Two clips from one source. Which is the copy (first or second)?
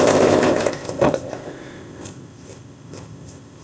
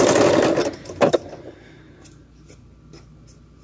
first